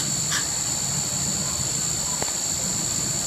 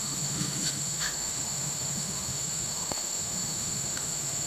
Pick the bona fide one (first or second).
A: first